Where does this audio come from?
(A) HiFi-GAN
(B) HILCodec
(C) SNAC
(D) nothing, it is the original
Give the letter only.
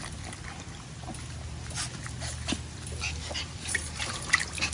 D